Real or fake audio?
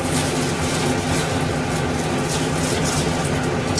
real